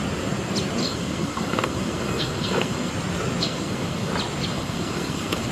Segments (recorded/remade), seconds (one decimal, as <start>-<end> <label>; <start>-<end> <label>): 0.0-0.8 recorded; 0.8-2.9 remade; 2.9-3.4 recorded; 3.4-4.1 remade; 4.1-4.5 recorded; 4.5-5.5 remade